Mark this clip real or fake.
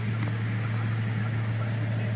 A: real